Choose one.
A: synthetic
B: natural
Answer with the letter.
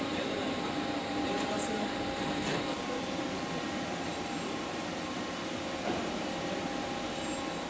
A